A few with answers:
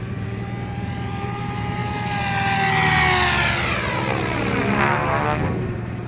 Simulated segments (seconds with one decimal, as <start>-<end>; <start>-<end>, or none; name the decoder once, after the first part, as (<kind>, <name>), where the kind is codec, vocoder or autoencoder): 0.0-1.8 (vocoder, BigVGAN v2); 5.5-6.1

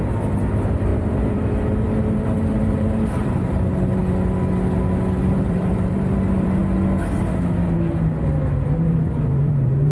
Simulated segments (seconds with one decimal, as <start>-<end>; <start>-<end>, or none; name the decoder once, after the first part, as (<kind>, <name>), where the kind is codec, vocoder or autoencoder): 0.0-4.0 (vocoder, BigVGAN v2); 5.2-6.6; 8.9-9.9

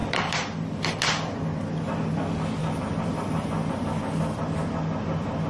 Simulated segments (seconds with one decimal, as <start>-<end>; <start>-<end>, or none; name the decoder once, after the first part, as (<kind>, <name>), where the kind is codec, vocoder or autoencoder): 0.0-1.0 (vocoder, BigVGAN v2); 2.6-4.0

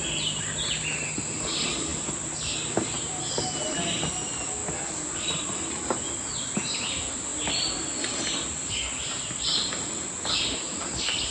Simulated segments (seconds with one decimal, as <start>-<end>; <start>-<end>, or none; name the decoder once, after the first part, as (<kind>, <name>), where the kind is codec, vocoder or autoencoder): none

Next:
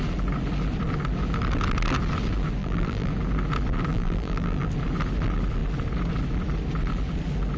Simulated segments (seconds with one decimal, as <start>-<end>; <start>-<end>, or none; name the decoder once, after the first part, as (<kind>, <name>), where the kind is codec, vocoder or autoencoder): 2.6-3.1 (vocoder, BigVGAN v2); 3.9-4.7

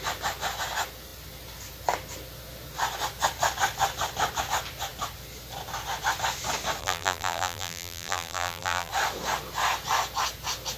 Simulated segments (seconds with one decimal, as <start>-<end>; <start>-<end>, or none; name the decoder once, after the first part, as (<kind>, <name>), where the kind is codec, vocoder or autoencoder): 6.8-8.9 (vocoder, BigVGAN v2)

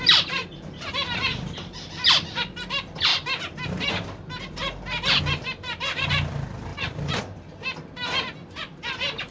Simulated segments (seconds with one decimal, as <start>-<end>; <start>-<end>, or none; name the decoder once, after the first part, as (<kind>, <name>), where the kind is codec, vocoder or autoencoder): 0.0-3.1 (vocoder, BigVGAN v2); 5.2-9.3